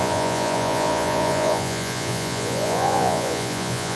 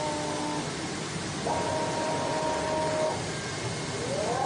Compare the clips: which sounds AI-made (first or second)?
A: first